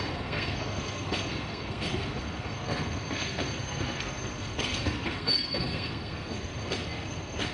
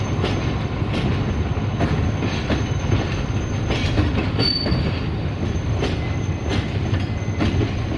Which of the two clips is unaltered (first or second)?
second